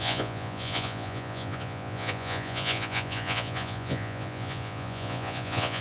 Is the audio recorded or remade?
remade